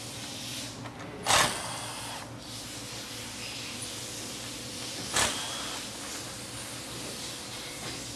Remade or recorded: recorded